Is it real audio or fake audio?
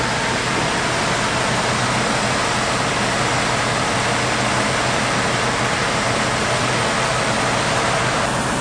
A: real